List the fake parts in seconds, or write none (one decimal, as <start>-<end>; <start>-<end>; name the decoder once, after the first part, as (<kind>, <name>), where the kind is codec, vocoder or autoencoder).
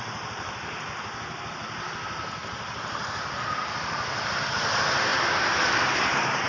none